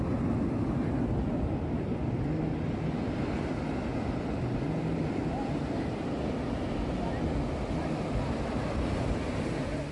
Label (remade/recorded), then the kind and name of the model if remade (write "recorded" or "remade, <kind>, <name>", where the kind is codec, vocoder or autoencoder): recorded